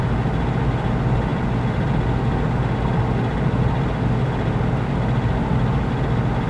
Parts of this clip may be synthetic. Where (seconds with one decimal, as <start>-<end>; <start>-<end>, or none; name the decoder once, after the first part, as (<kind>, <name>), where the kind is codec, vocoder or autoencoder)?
none